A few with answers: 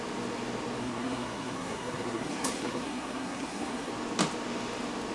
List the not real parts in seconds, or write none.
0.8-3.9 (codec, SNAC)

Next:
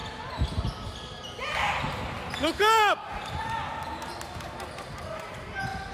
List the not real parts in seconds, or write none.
none

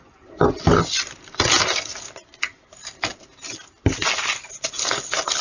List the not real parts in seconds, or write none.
none

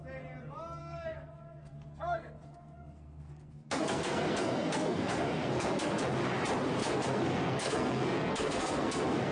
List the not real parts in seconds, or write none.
0.8-6.0 (codec, SNAC); 6.8-9.3

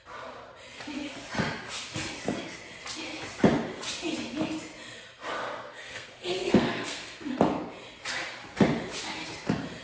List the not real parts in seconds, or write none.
5.4-7.3 (codec, SNAC)